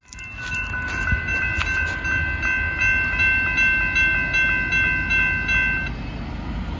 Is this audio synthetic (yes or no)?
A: no